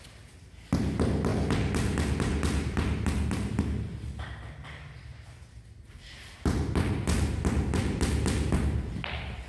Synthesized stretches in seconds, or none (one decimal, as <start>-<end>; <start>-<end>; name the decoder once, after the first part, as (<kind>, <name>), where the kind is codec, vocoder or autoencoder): none

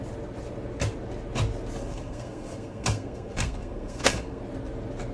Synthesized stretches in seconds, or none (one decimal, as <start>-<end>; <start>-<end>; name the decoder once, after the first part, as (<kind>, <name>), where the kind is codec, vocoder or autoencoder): 1.8-4.4 (codec, SNAC)

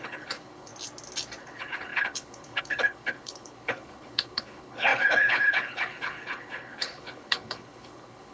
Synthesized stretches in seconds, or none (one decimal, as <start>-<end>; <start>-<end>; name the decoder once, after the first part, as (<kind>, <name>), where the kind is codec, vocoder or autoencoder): 0.0-0.7 (codec, HILCodec); 1.4-8.3

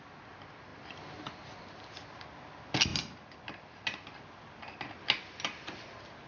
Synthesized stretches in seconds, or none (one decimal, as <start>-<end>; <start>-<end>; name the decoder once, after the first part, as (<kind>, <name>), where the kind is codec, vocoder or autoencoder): none

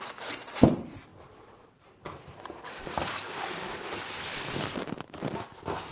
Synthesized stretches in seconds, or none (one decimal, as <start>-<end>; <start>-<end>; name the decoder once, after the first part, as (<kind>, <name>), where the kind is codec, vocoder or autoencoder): 1.1-4.6 (vocoder, BigVGAN v2)

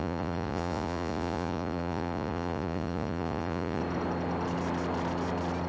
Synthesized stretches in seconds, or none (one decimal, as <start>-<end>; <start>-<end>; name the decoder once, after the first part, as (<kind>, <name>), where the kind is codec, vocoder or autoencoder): 0.0-3.8 (vocoder, Vocos)

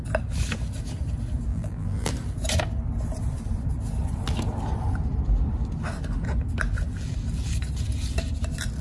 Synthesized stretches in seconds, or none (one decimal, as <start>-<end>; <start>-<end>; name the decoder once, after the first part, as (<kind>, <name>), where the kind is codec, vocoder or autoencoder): 1.5-2.1 (vocoder, BigVGAN v2)